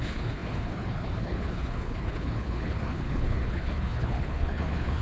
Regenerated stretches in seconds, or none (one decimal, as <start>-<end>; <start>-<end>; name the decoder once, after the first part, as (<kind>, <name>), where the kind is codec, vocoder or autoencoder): 0.0-5.0 (codec, HILCodec)